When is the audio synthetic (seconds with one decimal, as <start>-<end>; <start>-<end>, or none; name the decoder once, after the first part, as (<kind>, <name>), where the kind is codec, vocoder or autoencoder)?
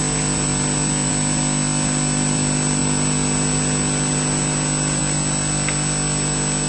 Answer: none